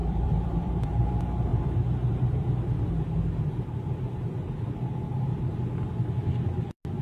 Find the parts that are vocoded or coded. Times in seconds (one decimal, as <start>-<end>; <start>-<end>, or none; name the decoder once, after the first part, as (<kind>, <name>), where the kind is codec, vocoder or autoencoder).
0.0-1.1 (vocoder, BigVGAN v2); 1.5-2.1